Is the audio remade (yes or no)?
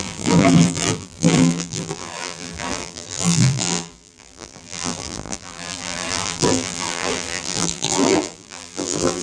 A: yes